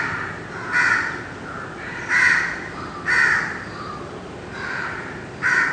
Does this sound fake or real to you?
real